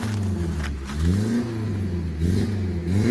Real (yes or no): yes